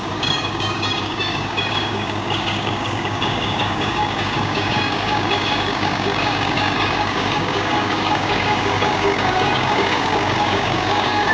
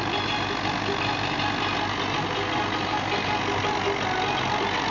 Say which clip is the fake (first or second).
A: first